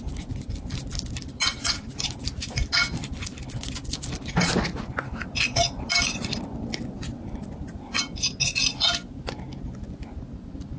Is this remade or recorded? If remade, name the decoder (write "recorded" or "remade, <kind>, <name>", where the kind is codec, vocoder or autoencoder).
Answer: recorded